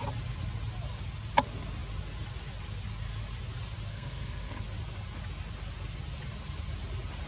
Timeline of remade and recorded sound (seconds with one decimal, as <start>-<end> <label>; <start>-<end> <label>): 0.0-3.9 recorded; 3.9-4.6 remade; 4.6-7.3 recorded